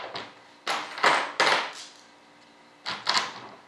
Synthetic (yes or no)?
no